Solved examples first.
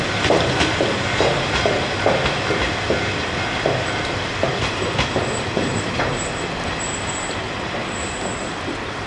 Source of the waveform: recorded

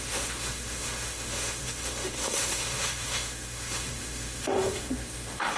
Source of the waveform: remade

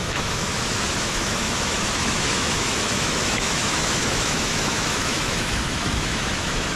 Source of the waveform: remade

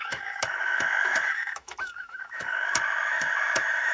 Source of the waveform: remade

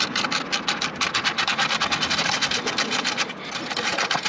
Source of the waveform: recorded